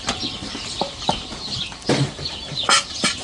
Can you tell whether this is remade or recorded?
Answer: remade